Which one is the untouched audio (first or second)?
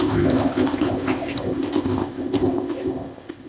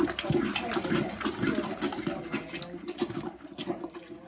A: second